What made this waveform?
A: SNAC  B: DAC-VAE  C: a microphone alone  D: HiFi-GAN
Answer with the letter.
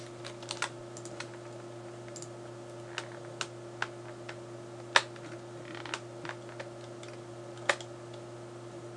C